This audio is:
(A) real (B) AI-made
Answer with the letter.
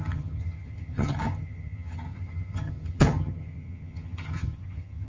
B